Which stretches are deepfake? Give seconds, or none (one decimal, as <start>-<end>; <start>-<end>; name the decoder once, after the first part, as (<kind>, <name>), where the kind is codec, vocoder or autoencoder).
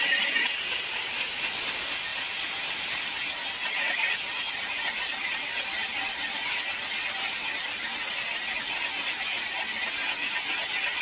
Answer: none